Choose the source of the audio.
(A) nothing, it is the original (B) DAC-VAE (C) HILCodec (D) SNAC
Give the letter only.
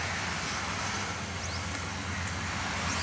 A